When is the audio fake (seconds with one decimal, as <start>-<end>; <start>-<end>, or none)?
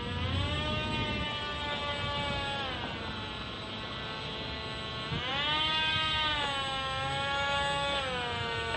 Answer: none